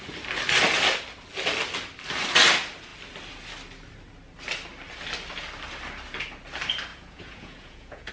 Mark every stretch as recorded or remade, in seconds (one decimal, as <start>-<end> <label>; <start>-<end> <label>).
0.0-6.9 recorded; 6.9-8.1 remade